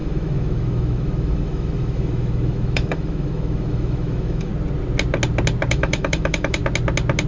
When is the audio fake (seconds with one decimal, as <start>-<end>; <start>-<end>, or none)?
0.0-4.5; 5.7-6.6